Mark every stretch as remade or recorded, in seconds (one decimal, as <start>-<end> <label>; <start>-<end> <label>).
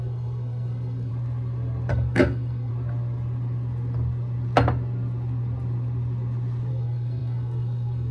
0.0-1.1 remade; 1.1-1.9 recorded; 1.9-2.7 remade; 2.7-6.7 recorded; 6.7-8.1 remade